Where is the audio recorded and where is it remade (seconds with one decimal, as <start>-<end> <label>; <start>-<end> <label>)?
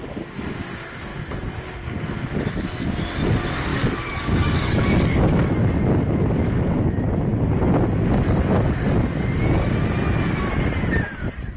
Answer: 0.0-3.7 recorded; 3.7-5.2 remade; 5.2-11.6 recorded